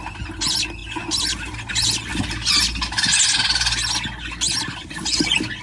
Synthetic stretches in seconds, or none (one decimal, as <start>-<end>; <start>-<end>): 0.8-1.7